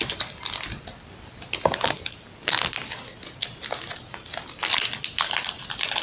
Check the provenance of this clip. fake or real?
real